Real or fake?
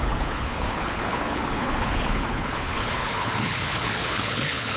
fake